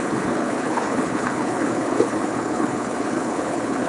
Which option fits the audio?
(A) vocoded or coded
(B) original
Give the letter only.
A